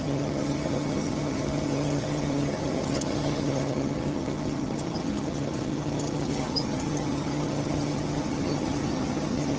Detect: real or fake fake